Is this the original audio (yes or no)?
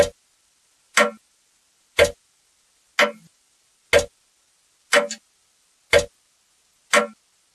yes